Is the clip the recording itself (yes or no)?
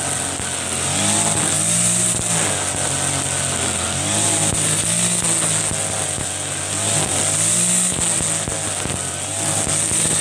yes